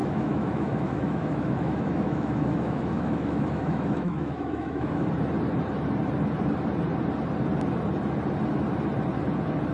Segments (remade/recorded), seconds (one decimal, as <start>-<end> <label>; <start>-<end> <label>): 0.0-5.1 remade; 5.1-9.7 recorded